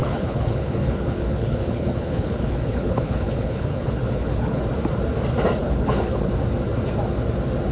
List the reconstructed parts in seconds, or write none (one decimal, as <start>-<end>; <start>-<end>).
0.0-4.6; 5.6-6.3